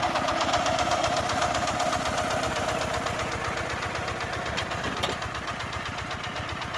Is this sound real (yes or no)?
yes